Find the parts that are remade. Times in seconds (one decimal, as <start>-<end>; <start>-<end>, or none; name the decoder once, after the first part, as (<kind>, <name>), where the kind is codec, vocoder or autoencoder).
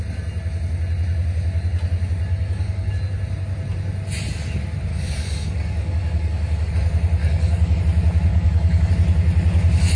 2.3-2.9 (codec, DAC); 4.9-6.7; 7.2-7.8; 8.3-8.9